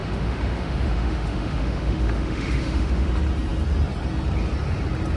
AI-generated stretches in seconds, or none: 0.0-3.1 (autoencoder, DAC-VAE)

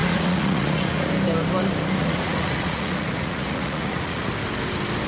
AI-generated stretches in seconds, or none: 0.0-1.1 (vocoder, Vocos); 2.0-4.3

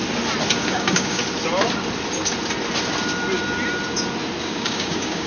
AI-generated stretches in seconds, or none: 0.6-1.2 (codec, DAC); 4.4-5.3

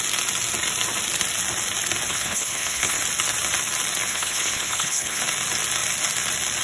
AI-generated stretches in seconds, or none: 2.1-3.0 (codec, HILCodec); 4.1-5.2

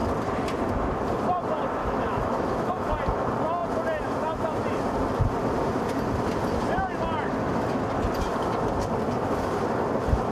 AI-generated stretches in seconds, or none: 1.8-2.7 (autoencoder, DAC-VAE)

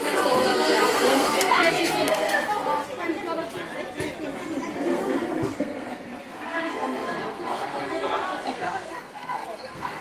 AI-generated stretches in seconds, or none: 0.0-2.8 (codec, SNAC); 4.8-10.0